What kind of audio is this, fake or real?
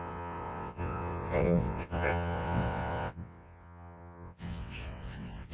fake